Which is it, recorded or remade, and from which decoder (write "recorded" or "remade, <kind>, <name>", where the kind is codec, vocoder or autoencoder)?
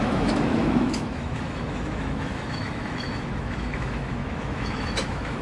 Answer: remade, autoencoder, DAC-VAE